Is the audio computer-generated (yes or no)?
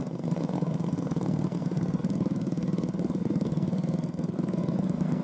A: yes